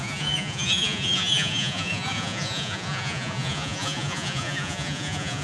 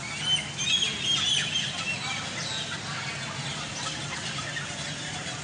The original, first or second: second